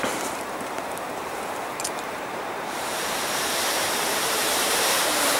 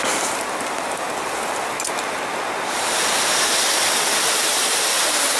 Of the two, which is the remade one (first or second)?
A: first